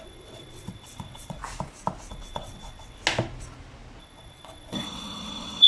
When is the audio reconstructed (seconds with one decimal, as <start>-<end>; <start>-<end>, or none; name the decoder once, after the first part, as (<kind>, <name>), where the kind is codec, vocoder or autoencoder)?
0.0-1.4 (vocoder, WaveNeXt); 2.1-3.0; 4.0-5.7